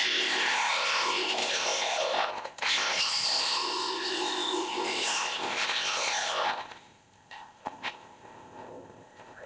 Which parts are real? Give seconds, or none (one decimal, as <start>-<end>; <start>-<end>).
none